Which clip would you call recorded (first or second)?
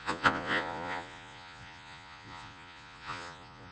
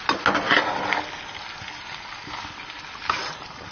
second